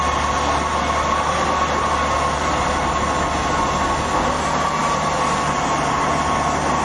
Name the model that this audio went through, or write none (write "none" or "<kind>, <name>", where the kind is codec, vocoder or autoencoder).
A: none